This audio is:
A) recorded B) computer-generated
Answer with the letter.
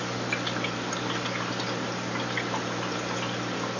A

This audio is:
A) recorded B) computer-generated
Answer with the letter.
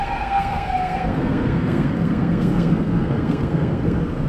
B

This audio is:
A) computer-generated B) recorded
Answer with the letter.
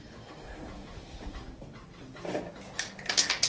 B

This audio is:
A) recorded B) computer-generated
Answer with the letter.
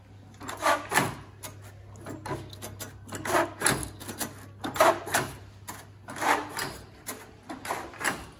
A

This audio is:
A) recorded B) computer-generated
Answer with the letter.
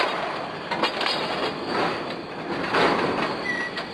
A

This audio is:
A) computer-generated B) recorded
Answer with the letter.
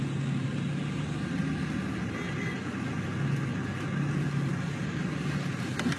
B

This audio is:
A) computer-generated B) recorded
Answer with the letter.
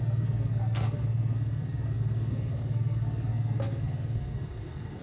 A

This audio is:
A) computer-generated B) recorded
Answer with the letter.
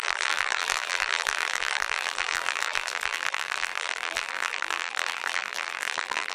A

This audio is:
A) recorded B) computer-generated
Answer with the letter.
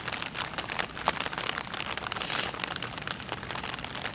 A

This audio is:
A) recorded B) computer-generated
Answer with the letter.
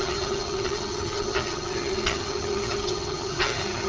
B